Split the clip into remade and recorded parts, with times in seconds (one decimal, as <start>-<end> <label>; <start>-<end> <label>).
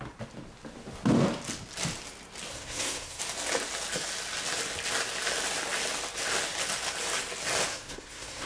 0.0-2.5 recorded; 2.5-3.2 remade; 3.2-7.7 recorded; 7.7-8.5 remade